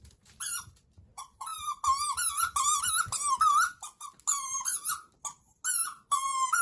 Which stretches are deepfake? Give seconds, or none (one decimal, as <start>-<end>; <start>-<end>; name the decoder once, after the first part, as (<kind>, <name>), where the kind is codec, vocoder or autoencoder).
none